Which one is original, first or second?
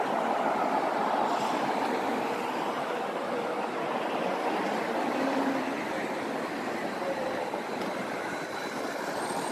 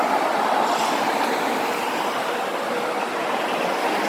second